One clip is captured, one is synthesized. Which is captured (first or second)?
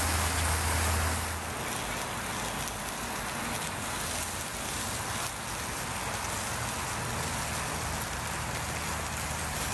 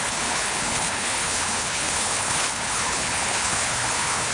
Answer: first